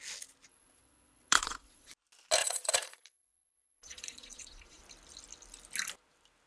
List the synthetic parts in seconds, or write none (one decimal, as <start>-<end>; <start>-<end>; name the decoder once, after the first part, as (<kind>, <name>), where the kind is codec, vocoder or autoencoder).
0.5-1.9 (vocoder, Vocos); 2.4-4.8